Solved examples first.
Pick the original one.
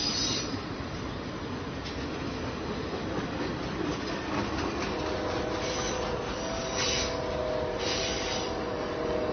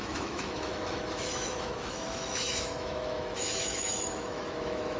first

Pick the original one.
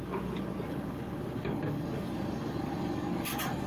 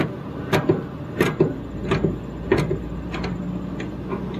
second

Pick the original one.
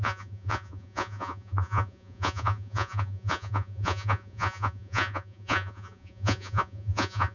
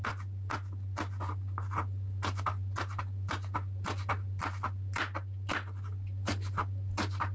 second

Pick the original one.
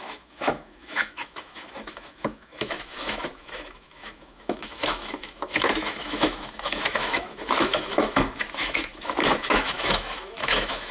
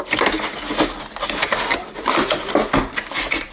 second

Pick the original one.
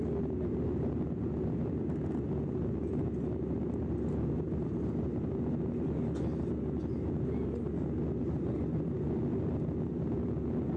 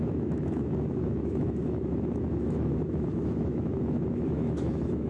first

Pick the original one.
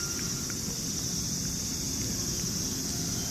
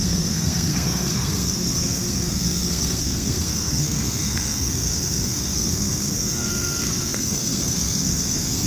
first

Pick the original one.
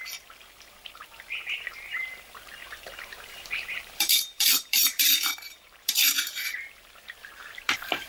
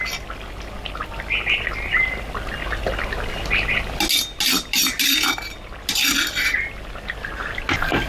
second